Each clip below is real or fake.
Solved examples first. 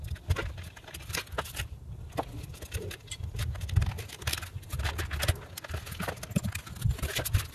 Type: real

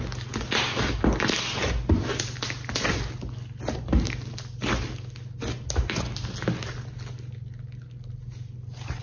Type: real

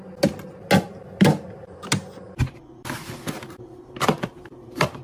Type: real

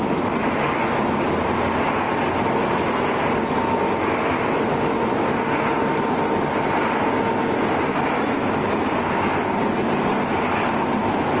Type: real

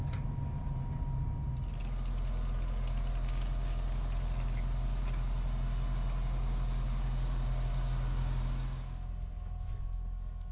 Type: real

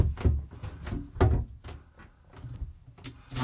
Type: real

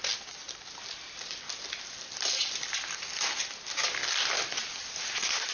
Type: real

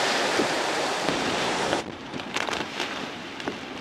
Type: fake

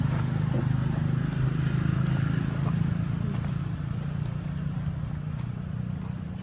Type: real